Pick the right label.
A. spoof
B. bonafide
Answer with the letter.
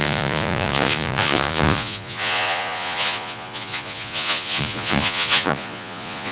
A